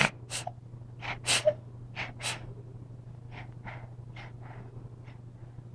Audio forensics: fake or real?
real